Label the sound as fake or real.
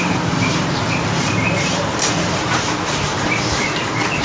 fake